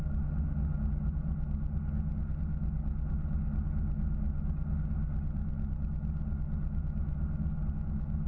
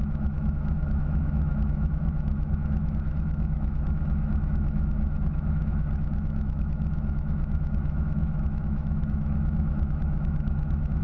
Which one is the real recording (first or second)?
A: first